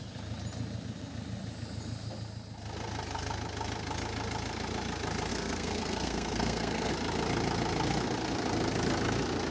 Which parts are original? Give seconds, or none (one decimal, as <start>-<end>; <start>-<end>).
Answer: 0.0-5.3; 6.9-9.5